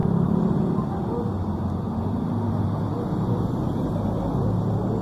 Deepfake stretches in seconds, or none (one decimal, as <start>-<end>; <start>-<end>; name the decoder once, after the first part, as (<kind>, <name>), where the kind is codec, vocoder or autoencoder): none